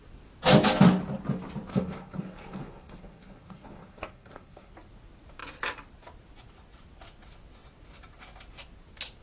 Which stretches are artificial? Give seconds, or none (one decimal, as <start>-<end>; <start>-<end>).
1.7-4.7